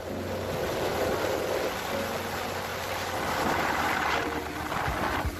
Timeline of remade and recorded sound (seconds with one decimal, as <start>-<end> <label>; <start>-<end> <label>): 0.0-2.7 recorded; 2.7-4.4 remade; 4.4-5.4 recorded